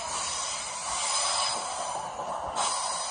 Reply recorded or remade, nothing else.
recorded